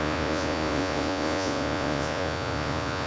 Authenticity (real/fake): fake